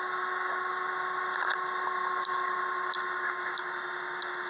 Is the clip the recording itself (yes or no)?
yes